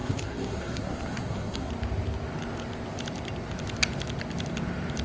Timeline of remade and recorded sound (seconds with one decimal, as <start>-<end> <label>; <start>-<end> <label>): 0.0-1.7 remade; 1.7-5.0 recorded